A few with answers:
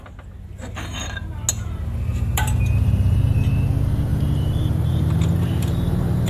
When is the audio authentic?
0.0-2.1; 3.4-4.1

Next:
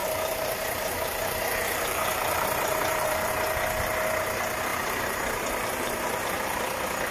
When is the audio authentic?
3.3-4.7; 6.6-7.1

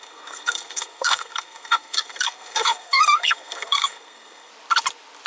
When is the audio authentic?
4.5-5.3

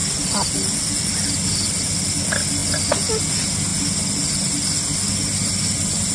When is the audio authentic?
0.0-6.1

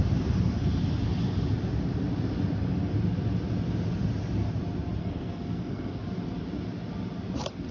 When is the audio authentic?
0.0-5.0; 6.0-7.7

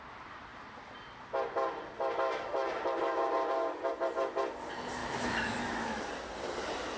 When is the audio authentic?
0.0-5.0; 6.0-7.0

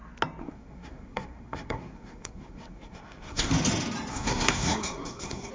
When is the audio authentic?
0.0-0.4; 3.5-4.1